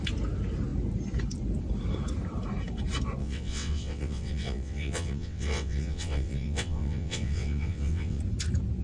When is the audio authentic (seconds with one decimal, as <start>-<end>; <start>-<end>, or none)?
0.0-3.2; 8.2-8.8